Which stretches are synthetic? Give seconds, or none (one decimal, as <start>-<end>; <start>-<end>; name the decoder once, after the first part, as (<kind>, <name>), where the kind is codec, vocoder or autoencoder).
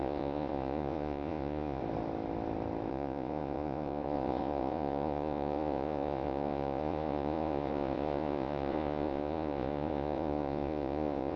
0.0-1.8 (vocoder, Vocos); 2.9-11.4